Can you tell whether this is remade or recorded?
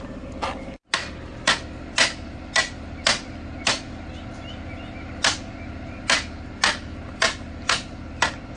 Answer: recorded